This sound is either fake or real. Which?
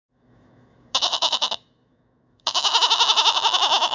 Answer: fake